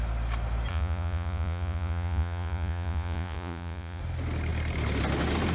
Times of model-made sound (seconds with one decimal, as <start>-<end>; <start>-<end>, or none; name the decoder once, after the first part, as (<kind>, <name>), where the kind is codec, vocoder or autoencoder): 0.7-4.0 (vocoder, Vocos)